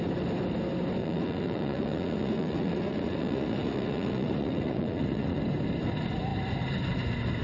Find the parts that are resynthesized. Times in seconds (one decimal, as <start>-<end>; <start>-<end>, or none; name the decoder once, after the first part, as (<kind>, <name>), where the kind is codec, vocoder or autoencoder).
1.0-5.4 (vocoder, Vocos)